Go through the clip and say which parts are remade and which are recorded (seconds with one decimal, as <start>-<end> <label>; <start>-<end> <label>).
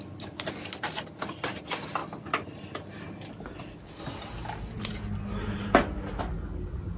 0.0-7.0 recorded